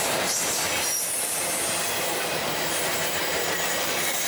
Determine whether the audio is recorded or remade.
remade